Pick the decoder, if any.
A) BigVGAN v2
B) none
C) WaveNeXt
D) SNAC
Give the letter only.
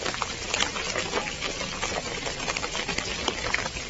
B